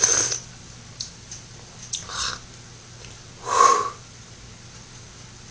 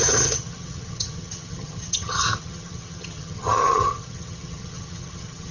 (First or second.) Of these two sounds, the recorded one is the first